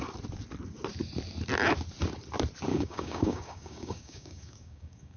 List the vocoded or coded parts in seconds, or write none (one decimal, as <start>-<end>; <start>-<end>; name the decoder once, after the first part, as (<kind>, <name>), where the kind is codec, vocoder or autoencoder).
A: 2.7-5.2 (codec, DAC)